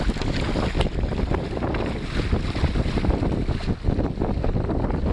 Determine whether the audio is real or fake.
real